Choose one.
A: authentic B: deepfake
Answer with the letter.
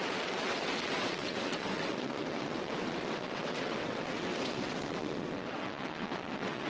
B